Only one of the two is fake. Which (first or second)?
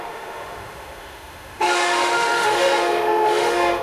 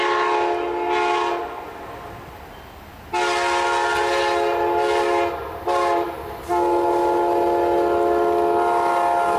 first